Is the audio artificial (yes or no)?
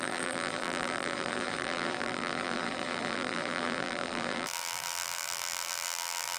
yes